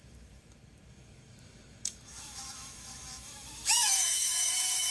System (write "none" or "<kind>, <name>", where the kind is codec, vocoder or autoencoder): autoencoder, DAC-VAE